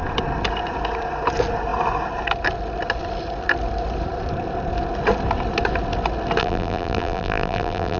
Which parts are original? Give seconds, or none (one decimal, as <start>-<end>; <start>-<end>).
0.0-6.4